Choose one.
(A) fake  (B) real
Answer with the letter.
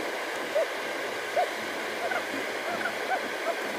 B